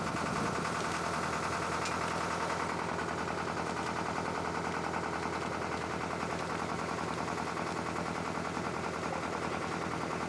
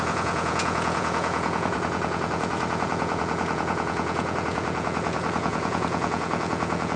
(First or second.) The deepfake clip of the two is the second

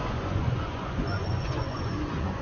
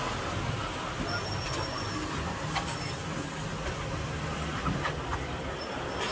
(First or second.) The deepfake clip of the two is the first